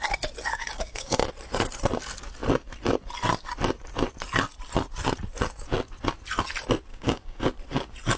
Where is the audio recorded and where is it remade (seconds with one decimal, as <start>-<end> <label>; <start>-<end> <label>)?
0.0-0.5 recorded; 0.5-1.3 remade; 1.3-6.9 recorded; 6.9-7.5 remade; 7.5-8.2 recorded